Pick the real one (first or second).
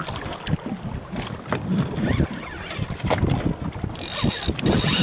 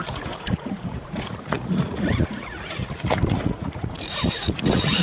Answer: first